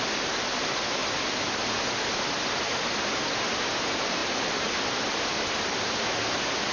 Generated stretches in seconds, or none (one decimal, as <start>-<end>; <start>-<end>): none